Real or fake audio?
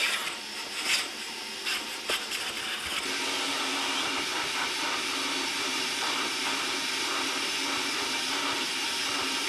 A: real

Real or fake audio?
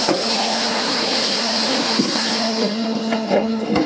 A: fake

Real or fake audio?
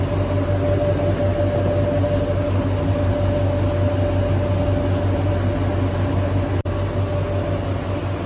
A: real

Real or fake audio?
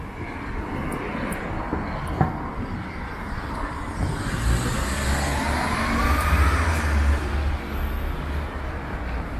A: real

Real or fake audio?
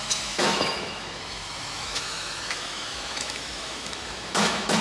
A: fake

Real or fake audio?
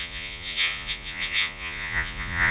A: fake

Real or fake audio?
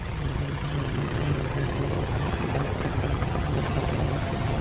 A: fake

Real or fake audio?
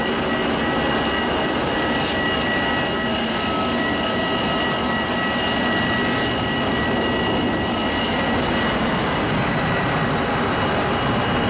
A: real